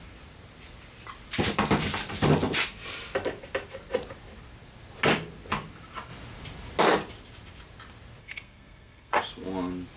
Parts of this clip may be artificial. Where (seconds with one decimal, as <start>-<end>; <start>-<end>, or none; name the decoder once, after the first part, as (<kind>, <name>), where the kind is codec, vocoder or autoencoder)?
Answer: 8.2-9.2 (codec, SNAC)